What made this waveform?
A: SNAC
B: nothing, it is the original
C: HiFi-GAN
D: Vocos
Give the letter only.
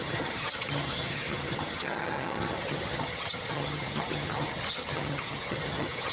C